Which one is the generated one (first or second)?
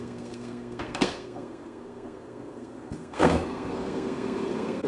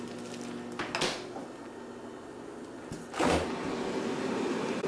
first